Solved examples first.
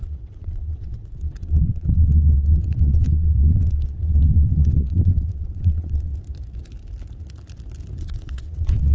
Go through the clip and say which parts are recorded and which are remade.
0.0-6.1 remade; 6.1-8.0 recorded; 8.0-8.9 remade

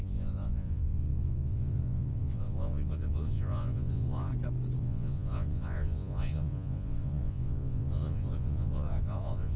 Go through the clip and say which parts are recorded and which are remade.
0.0-4.3 remade; 4.3-4.8 recorded; 4.8-9.6 remade

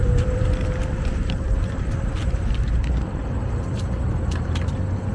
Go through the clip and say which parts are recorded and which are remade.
0.0-3.1 remade; 3.1-5.1 recorded

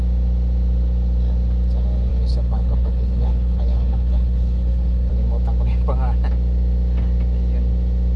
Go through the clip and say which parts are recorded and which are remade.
0.0-2.1 recorded; 2.1-5.1 remade; 5.1-8.2 recorded

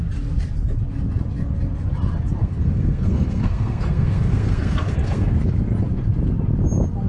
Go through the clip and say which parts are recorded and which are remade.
0.0-2.4 recorded; 2.4-5.3 remade; 5.3-7.1 recorded

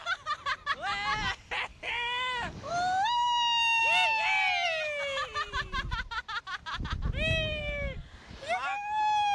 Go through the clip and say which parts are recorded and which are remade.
0.0-1.7 recorded; 1.7-2.7 remade; 2.7-9.3 recorded

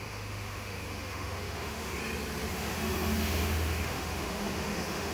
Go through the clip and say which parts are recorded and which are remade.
0.0-2.0 remade; 2.0-2.5 recorded; 2.5-5.1 remade